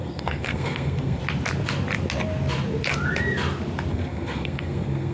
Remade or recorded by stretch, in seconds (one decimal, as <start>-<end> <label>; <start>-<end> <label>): 0.0-1.2 remade; 1.2-3.9 recorded; 3.9-5.1 remade